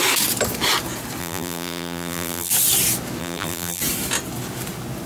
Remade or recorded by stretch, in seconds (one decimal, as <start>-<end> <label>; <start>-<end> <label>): 0.0-1.2 recorded; 1.2-2.5 remade; 2.5-3.2 recorded; 3.2-3.8 remade; 3.8-5.1 recorded

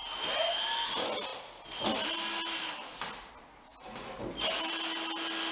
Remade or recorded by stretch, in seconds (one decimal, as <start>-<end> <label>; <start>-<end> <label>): 0.0-5.5 recorded